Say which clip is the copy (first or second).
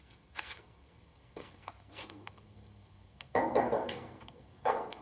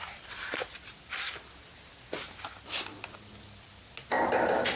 first